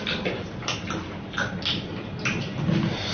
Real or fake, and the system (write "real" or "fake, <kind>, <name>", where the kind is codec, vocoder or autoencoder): real